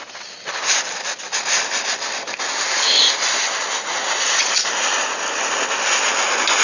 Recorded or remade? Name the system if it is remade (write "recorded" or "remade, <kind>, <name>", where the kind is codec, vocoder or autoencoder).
recorded